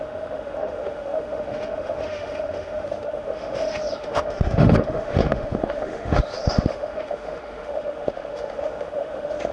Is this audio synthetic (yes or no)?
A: yes